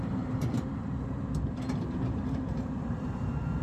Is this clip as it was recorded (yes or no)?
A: no